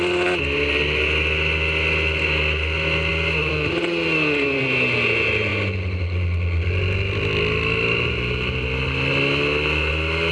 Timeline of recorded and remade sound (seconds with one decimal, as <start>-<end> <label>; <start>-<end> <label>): 0.0-10.3 recorded

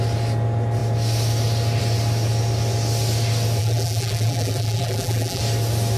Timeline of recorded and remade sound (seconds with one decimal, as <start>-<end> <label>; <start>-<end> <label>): 0.0-3.6 recorded; 3.6-5.4 remade; 5.4-6.0 recorded

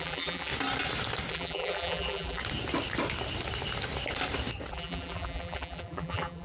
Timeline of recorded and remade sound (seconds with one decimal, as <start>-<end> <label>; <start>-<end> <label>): 0.0-0.5 remade; 0.5-1.3 recorded; 1.3-2.4 remade; 2.4-4.7 recorded; 4.7-6.4 remade

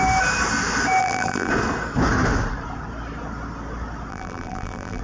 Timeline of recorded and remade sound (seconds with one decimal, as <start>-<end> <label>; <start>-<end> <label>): 0.0-1.0 recorded; 1.0-1.5 remade; 1.5-4.1 recorded; 4.1-5.0 remade